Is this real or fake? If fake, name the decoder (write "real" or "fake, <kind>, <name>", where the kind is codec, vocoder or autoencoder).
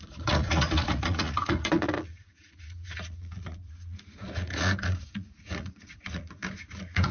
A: fake, vocoder, Vocos